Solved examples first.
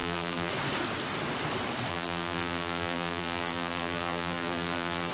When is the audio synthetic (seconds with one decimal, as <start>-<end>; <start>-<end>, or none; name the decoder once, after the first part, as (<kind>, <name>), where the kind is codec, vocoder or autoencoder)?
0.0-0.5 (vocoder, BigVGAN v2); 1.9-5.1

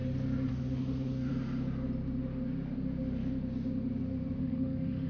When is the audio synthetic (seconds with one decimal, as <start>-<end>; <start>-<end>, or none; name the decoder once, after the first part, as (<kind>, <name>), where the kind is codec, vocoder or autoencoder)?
0.5-1.3 (autoencoder, DAC-VAE); 4.4-5.1

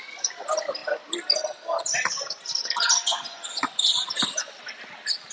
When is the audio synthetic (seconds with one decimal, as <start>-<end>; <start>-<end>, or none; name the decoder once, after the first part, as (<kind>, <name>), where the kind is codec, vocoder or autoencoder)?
3.1-3.8 (vocoder, Vocos)

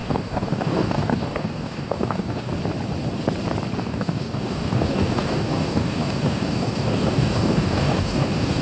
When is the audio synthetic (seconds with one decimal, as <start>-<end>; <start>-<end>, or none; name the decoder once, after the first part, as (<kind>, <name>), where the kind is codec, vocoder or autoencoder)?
0.0-2.5 (codec, DAC); 3.8-8.6

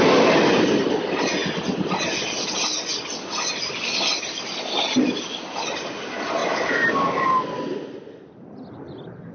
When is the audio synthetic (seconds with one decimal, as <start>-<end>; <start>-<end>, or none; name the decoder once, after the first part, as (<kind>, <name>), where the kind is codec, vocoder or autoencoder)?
none

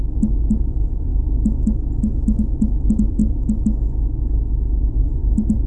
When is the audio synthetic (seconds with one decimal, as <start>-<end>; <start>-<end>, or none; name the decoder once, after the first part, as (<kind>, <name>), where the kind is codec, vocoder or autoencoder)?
none

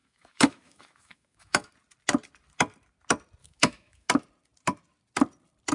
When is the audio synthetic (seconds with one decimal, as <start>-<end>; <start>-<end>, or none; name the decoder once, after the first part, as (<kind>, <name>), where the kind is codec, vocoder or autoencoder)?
0.0-1.7 (autoencoder, DAC-VAE); 3.4-4.1